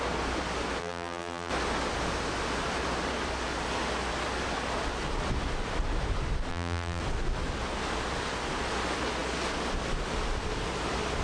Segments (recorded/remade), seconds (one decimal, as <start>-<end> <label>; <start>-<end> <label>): 0.0-0.8 recorded; 0.8-1.5 remade; 1.5-6.5 recorded; 6.5-7.0 remade; 7.0-11.2 recorded